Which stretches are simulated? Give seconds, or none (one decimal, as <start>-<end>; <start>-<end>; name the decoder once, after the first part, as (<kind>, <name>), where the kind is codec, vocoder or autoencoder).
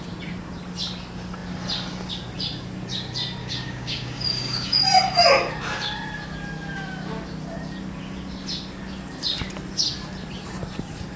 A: 3.4-4.8 (codec, DAC)